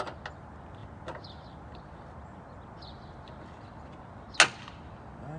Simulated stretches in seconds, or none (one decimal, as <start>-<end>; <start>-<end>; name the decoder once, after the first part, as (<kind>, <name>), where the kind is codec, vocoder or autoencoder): none